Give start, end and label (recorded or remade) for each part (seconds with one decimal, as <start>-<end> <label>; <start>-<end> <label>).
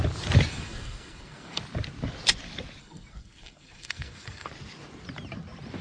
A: 0.0-0.5 recorded; 0.5-1.6 remade; 1.6-2.8 recorded; 2.8-4.5 remade; 4.5-5.8 recorded